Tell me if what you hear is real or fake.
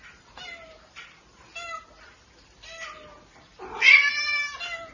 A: real